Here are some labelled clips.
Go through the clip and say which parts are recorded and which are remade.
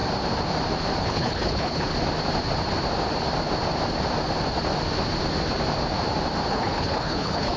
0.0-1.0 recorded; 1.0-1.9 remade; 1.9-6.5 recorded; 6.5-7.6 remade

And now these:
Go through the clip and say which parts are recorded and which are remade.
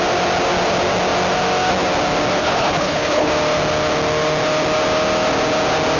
0.0-2.4 recorded; 2.4-3.3 remade; 3.3-6.0 recorded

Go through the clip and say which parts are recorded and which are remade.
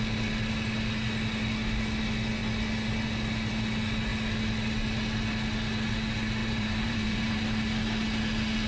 0.0-6.4 recorded; 6.4-7.4 remade; 7.4-8.7 recorded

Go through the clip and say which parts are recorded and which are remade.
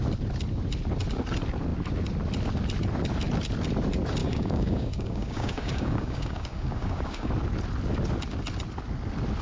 0.0-4.2 recorded; 4.2-7.3 remade; 7.3-9.4 recorded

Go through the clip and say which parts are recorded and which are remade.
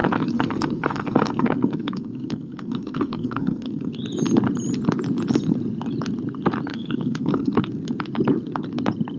0.0-3.9 remade; 3.9-6.7 recorded; 6.7-7.6 remade; 7.6-9.2 recorded